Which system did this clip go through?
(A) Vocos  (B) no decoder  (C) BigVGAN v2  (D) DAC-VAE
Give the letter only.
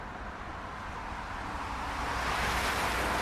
C